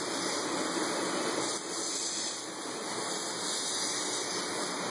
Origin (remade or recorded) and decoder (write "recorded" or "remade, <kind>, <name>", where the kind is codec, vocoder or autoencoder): recorded